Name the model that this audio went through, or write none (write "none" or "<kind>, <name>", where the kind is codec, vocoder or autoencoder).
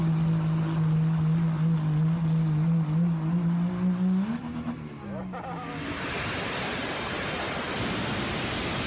none